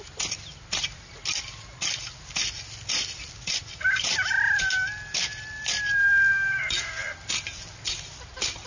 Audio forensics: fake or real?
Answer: real